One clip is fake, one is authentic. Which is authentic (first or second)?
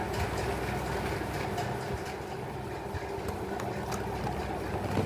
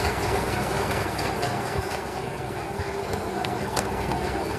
first